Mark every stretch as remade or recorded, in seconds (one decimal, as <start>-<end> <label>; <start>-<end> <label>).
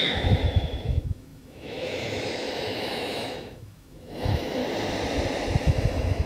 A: 0.0-4.6 remade; 4.6-5.6 recorded; 5.6-6.3 remade